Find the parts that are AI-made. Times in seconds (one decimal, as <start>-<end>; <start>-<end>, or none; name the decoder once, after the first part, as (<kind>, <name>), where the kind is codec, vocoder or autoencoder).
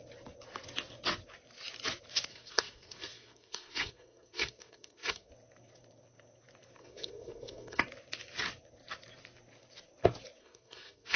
2.3-5.3 (codec, SNAC); 6.8-7.8; 10.4-11.2